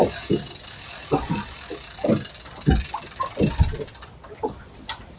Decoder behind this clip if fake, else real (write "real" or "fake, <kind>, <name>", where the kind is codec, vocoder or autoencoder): real